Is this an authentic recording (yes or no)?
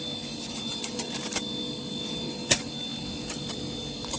yes